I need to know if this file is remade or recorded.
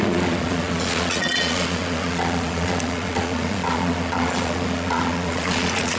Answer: remade